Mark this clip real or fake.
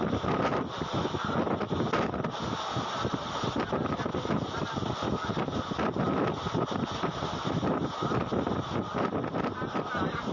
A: real